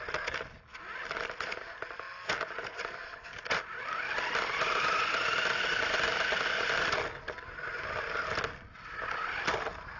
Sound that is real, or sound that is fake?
real